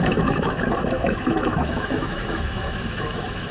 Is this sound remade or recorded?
remade